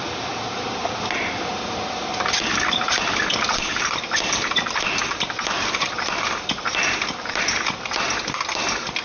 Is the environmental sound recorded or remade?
remade